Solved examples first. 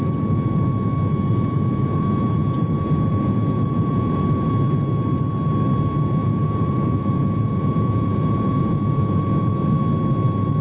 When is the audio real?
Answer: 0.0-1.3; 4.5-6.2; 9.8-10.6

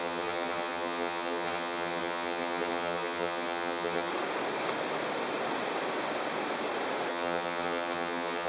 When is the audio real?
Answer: 4.1-7.1

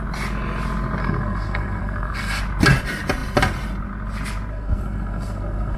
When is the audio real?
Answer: 0.0-1.0; 2.4-4.5

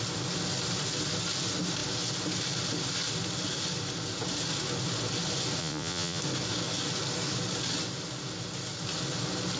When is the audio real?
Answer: 0.0-5.6; 6.2-9.6